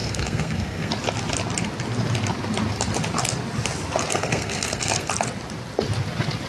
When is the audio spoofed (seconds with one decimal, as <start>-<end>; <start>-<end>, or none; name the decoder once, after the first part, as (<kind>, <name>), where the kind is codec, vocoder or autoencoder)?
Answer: 0.0-0.9 (codec, SNAC); 4.1-5.1